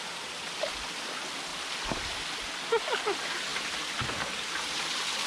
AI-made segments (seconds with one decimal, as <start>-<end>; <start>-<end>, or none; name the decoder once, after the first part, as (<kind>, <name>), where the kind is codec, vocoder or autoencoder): 3.5-4.0 (vocoder, BigVGAN v2)